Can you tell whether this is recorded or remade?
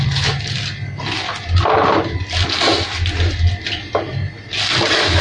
recorded